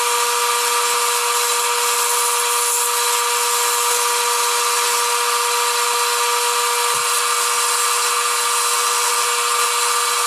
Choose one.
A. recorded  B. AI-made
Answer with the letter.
A